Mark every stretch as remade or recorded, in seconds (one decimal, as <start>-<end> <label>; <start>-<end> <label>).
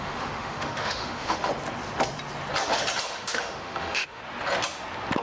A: 0.0-1.5 remade; 1.5-3.0 recorded; 3.0-4.2 remade; 4.2-5.2 recorded